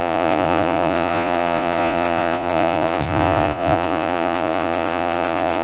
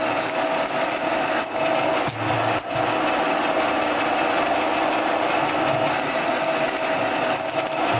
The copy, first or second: first